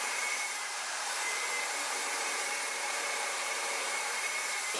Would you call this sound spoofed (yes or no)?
yes